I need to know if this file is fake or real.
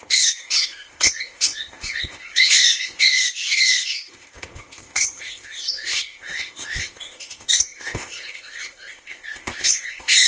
fake